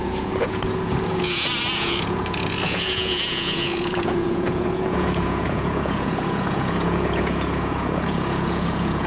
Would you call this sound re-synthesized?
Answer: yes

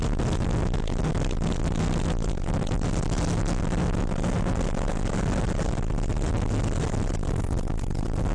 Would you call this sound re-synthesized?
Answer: no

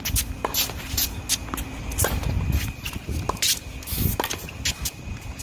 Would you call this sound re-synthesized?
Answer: no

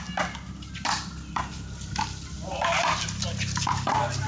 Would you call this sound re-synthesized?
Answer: no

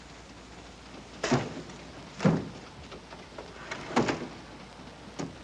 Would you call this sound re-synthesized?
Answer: no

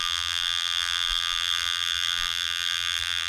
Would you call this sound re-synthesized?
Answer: yes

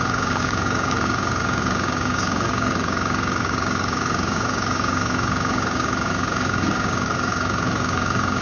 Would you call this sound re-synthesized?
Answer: yes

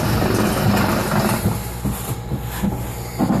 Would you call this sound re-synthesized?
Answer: no